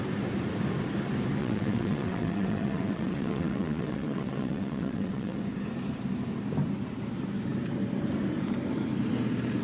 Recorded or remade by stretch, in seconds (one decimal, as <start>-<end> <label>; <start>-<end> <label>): 0.0-1.4 recorded; 1.4-5.4 remade; 5.4-9.6 recorded